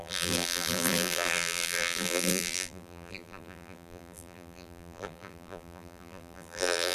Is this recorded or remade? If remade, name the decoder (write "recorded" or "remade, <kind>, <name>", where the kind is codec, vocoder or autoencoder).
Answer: remade, vocoder, BigVGAN v2